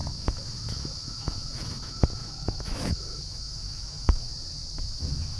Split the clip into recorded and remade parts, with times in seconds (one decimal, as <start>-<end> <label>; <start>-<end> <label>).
0.0-4.3 remade; 4.3-4.8 recorded; 4.8-5.4 remade